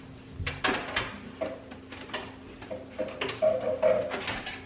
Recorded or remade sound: recorded